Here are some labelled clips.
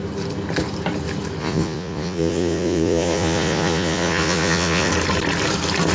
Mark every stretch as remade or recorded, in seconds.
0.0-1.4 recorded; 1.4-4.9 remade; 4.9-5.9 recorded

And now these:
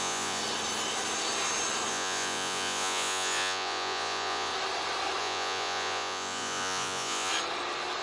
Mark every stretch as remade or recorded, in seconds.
0.0-0.4 remade; 0.4-1.9 recorded; 1.9-4.5 remade; 4.5-5.2 recorded; 5.2-7.3 remade; 7.3-8.0 recorded

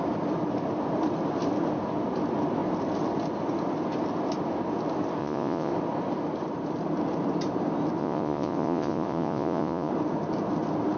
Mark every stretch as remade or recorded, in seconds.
0.0-5.2 recorded; 5.2-5.7 remade; 5.7-8.0 recorded; 8.0-9.9 remade; 9.9-11.0 recorded

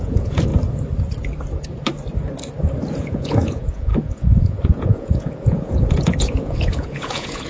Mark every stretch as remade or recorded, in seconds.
0.0-0.5 remade; 0.5-3.0 recorded; 3.0-7.5 remade

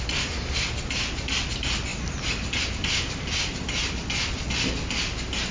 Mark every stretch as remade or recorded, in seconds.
0.0-5.5 recorded

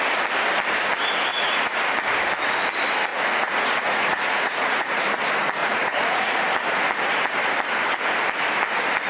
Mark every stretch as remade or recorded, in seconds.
0.0-1.3 recorded; 1.3-1.8 remade; 1.8-3.1 recorded; 3.1-5.0 remade; 5.0-5.6 recorded; 5.6-6.4 remade; 6.4-9.1 recorded

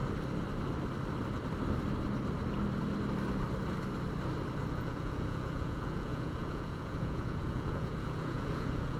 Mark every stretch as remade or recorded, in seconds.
0.0-4.7 recorded; 4.7-9.0 remade